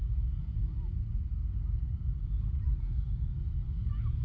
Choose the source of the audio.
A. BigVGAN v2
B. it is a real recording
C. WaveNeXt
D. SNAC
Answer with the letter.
B